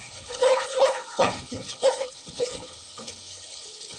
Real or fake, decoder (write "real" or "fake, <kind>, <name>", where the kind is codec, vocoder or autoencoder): fake, codec, HILCodec